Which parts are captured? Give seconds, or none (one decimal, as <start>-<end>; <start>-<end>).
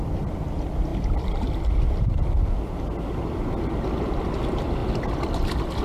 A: 0.0-5.8